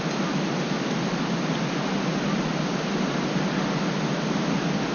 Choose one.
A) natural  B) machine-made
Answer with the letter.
A